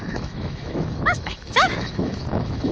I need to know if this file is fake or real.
fake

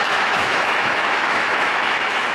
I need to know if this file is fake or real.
fake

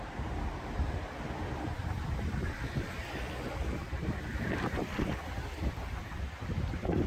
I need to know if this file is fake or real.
real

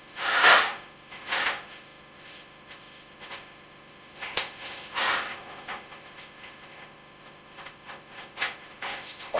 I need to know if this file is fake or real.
fake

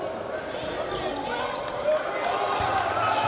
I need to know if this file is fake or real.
real